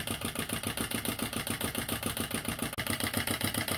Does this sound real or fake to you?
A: real